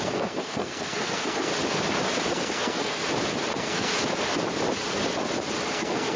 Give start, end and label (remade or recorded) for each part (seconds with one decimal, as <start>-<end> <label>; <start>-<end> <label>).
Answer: 0.0-1.5 remade; 1.5-2.3 recorded; 2.3-3.0 remade; 3.0-3.5 recorded; 3.5-3.9 remade; 3.9-5.7 recorded; 5.7-6.2 remade